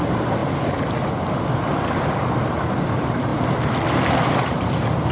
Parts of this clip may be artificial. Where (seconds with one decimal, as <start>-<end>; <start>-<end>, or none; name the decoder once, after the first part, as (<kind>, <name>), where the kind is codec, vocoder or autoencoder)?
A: 0.0-0.4 (vocoder, BigVGAN v2); 2.8-3.3; 4.3-5.1